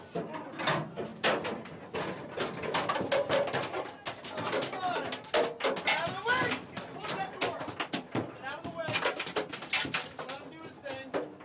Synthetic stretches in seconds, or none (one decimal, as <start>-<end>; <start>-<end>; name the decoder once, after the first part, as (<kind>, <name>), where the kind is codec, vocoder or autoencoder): none